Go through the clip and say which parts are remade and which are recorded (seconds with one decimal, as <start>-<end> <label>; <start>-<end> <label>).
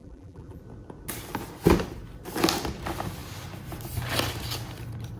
0.0-0.6 remade; 0.6-5.2 recorded